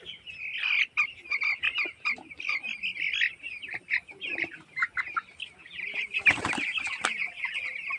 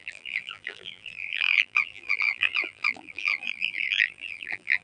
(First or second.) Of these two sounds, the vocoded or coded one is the second